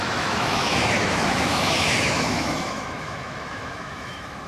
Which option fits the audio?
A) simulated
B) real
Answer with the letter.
A